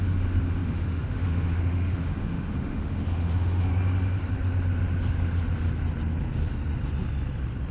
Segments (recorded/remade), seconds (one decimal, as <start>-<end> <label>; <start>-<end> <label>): 0.0-3.7 remade; 3.7-7.7 recorded